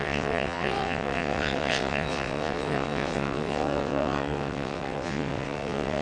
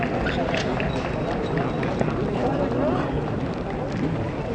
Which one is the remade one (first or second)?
first